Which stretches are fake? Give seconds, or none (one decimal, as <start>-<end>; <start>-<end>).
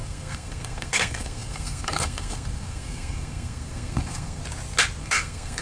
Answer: 0.0-4.4; 5.0-5.6